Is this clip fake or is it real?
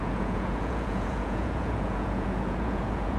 fake